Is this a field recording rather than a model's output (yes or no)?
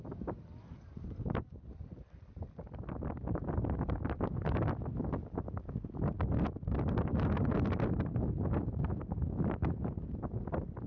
yes